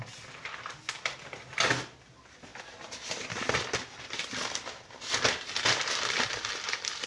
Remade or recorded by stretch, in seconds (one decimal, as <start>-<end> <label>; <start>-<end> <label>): 0.0-7.1 recorded